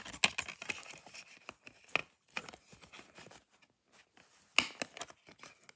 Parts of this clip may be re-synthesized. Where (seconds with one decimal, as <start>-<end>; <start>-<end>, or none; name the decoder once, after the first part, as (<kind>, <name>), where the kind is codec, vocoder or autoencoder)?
2.0-2.6 (vocoder, BigVGAN v2)